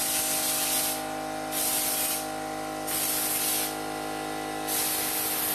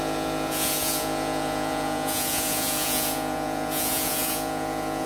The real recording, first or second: first